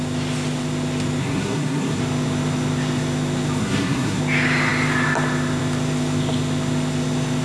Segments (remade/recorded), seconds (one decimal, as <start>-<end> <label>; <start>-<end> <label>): 0.0-1.2 recorded; 1.2-2.0 remade; 2.0-3.6 recorded; 3.6-4.2 remade; 4.2-7.4 recorded